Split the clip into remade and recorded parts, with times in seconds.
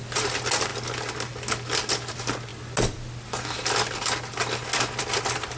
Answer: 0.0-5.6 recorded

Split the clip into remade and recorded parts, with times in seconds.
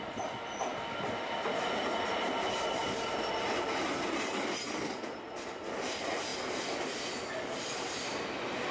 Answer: 0.0-8.7 recorded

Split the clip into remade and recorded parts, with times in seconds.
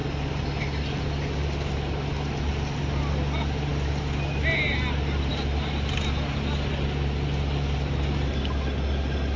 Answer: 0.0-9.4 recorded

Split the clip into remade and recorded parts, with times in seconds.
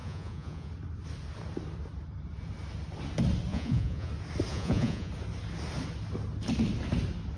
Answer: 0.0-0.7 remade; 0.7-3.5 recorded; 3.5-4.1 remade; 4.1-4.5 recorded; 4.5-5.1 remade; 5.1-7.4 recorded